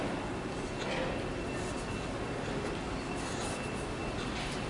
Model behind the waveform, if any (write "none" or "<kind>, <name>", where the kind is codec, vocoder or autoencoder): none